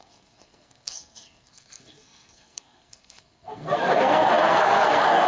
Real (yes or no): no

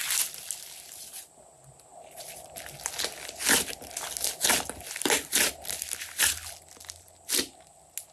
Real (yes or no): yes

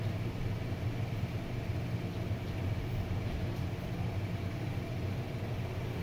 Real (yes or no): yes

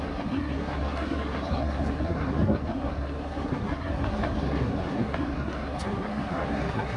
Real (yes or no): no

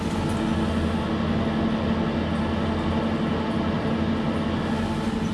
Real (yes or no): yes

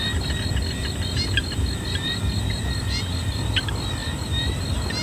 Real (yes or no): yes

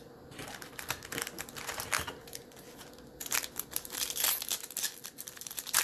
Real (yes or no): yes